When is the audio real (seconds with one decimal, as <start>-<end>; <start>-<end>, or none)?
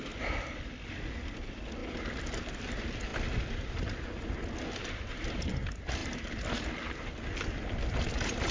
0.0-8.5